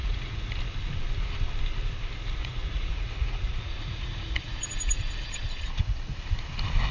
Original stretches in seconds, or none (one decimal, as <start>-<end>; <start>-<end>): 0.5-2.4; 6.2-6.9